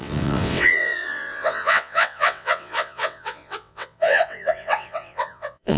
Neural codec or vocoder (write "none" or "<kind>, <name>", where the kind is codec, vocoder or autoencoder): vocoder, WaveNeXt